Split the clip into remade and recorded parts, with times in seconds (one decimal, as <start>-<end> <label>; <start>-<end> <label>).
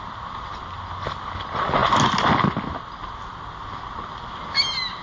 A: 0.0-5.0 recorded